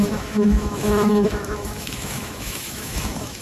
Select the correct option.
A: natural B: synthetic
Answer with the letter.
B